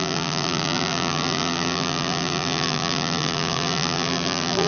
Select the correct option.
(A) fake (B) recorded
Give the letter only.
A